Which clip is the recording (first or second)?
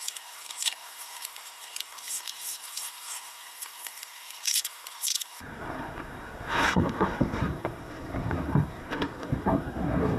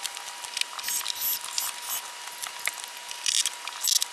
second